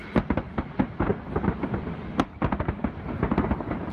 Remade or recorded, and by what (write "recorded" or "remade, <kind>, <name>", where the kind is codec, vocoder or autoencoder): recorded